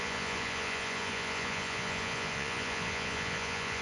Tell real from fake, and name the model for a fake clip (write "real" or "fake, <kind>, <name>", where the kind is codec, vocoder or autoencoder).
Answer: fake, vocoder, Vocos